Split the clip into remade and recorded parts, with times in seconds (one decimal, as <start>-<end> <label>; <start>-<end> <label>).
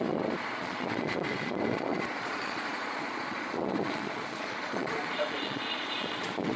0.0-6.6 remade